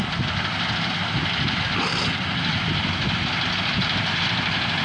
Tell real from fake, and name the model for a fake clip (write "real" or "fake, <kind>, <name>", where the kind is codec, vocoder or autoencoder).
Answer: real